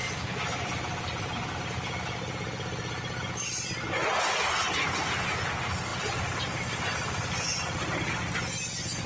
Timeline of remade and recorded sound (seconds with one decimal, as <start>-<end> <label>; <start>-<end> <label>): 0.0-3.5 remade; 3.5-5.9 recorded; 5.9-8.2 remade; 8.2-9.1 recorded